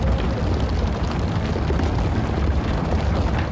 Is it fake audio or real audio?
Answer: real